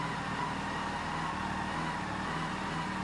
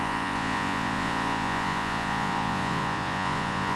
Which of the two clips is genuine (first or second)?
first